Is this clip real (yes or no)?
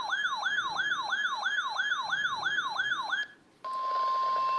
yes